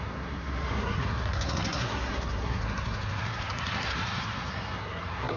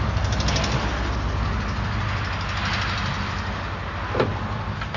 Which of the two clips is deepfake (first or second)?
first